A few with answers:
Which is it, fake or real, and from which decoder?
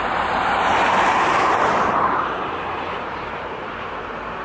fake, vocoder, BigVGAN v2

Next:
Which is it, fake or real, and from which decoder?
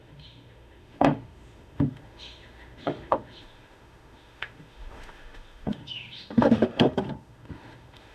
fake, autoencoder, DAC-VAE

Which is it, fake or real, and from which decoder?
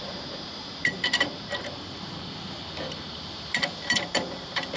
fake, vocoder, BigVGAN v2